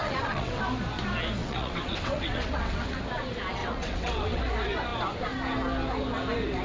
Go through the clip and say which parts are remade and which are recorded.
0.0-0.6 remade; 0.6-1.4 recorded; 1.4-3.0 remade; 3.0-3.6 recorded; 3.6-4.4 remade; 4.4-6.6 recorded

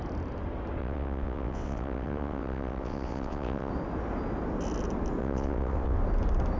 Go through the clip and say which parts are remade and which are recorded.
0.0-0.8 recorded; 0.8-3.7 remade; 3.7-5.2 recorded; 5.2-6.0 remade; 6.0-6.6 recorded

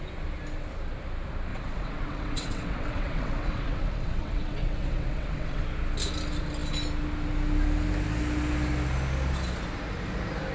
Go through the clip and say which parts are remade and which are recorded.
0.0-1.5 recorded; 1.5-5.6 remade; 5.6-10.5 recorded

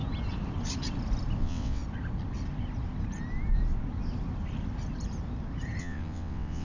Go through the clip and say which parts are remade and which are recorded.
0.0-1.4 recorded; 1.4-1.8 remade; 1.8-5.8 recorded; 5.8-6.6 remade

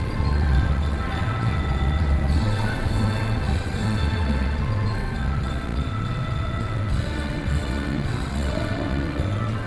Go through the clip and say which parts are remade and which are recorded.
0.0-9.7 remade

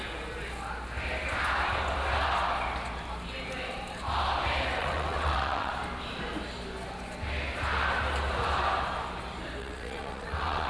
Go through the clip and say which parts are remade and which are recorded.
0.0-4.8 recorded; 4.8-5.7 remade; 5.7-9.6 recorded; 9.6-10.7 remade